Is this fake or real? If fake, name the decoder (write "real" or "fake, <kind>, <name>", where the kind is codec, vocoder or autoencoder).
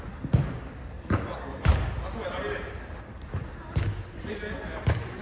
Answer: real